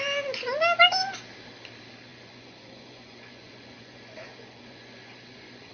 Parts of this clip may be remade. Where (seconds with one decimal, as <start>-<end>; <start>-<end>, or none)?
2.1-5.7